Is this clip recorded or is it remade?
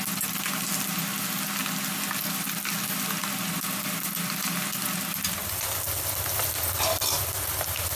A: recorded